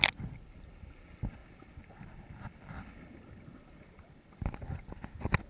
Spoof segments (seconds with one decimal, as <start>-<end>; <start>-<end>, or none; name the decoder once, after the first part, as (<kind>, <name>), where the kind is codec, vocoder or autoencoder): none